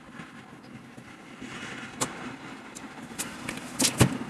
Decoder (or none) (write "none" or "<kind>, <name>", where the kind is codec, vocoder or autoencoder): none